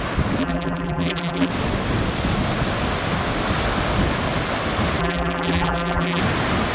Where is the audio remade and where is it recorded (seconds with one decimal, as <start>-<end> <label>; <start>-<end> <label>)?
0.0-0.4 recorded; 0.4-1.5 remade; 1.5-5.0 recorded; 5.0-6.2 remade; 6.2-6.7 recorded